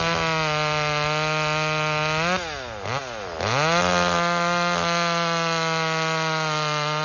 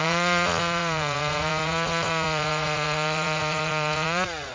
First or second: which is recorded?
first